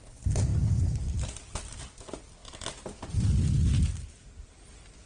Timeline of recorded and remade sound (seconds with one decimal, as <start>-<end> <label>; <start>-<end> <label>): 0.0-5.1 recorded